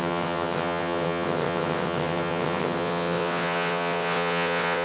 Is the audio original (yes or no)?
no